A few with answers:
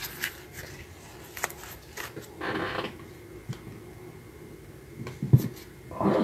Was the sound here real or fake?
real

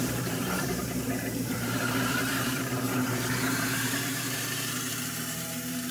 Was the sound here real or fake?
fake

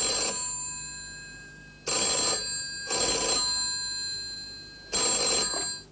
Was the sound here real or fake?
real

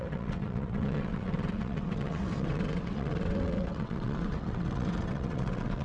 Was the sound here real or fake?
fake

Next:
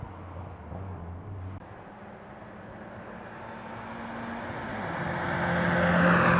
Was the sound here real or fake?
real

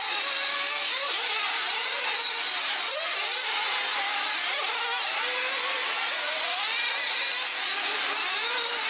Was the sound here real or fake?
real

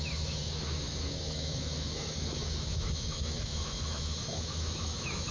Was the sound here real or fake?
fake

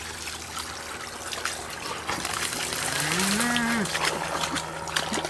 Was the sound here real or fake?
real